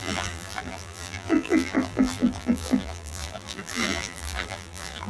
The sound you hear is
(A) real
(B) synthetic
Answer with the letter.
B